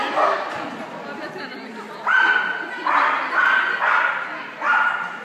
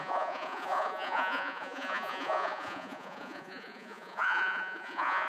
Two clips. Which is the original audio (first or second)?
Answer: first